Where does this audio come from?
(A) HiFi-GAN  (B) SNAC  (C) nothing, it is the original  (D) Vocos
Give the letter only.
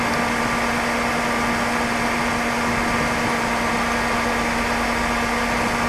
C